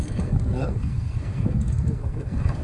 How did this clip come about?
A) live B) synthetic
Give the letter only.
B